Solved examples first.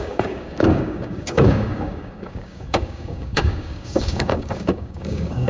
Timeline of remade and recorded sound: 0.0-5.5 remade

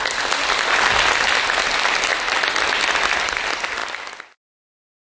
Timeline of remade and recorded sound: 0.0-2.1 recorded; 2.1-3.1 remade; 3.1-3.8 recorded; 3.8-4.6 remade; 4.6-5.0 recorded

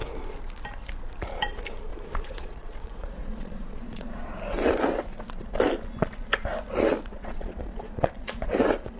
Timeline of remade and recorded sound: 0.0-1.9 recorded; 1.9-4.2 remade; 4.2-7.1 recorded; 7.1-8.5 remade; 8.5-9.0 recorded

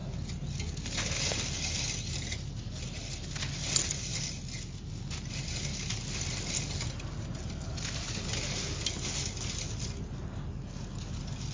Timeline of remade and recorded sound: 0.0-11.5 recorded